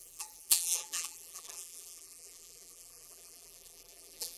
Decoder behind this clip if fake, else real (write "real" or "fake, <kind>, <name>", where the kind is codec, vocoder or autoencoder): fake, vocoder, BigVGAN v2